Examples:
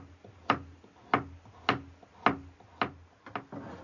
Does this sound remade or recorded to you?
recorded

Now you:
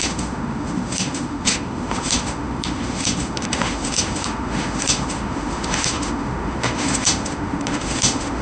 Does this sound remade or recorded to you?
remade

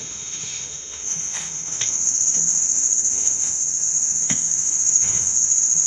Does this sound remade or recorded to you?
remade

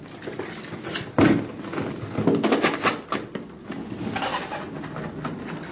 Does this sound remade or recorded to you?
recorded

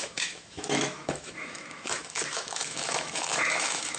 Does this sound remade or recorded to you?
remade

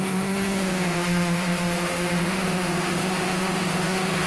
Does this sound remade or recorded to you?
remade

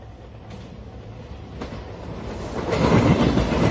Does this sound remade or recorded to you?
recorded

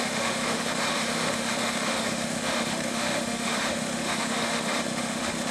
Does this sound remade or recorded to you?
remade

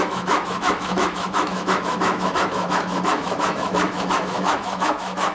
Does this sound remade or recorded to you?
remade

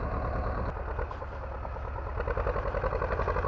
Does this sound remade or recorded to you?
recorded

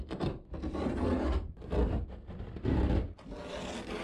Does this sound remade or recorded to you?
recorded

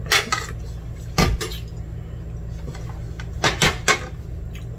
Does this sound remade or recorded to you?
recorded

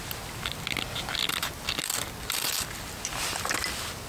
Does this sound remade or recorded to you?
recorded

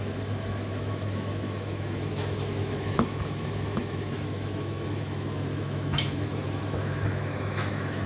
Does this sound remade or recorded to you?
remade